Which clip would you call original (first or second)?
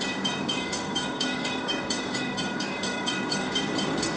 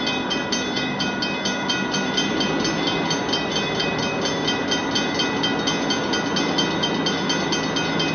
second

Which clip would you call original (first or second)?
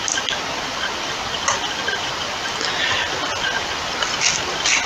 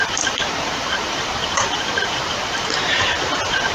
first